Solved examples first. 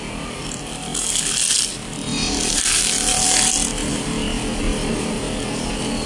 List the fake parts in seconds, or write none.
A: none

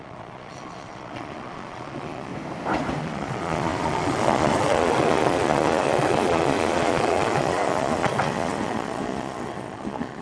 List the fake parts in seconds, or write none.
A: 0.0-2.3 (vocoder, Vocos); 3.0-10.2